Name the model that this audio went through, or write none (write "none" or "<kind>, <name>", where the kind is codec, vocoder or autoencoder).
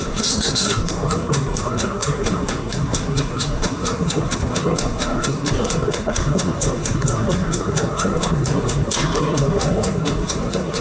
codec, SNAC